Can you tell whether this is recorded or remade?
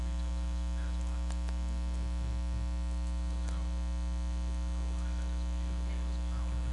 recorded